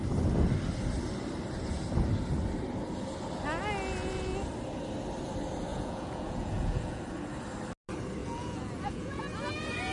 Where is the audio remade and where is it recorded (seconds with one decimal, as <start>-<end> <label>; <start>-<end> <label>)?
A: 0.0-5.7 recorded; 5.7-7.0 remade; 7.0-8.2 recorded; 8.2-9.2 remade; 9.2-9.9 recorded

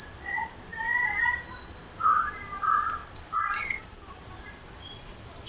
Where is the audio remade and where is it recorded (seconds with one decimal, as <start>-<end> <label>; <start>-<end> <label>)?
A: 0.0-5.5 remade

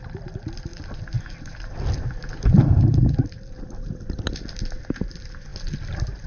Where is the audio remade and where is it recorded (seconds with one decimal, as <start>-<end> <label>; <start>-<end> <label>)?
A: 0.0-6.3 recorded